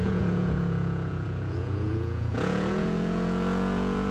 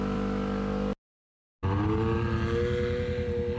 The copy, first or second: first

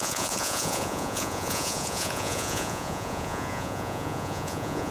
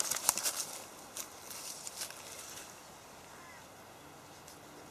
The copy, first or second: first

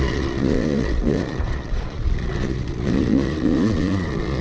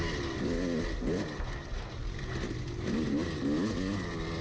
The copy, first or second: first